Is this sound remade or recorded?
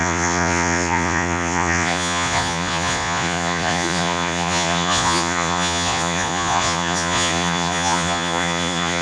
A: remade